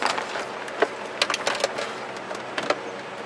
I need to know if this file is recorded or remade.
recorded